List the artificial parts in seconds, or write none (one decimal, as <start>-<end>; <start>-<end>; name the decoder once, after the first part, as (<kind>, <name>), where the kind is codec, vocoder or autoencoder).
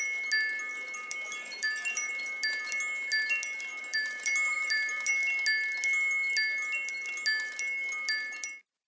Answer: 0.7-2.1 (vocoder, BigVGAN v2); 3.7-5.1